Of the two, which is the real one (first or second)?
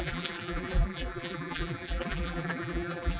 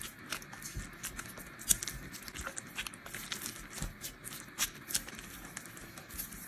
second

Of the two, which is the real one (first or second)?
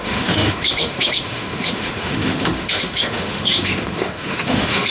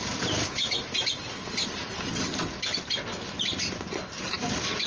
second